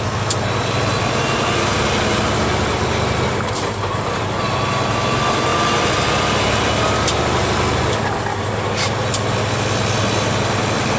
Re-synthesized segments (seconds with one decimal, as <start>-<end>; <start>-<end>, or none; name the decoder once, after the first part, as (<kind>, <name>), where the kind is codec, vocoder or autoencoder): none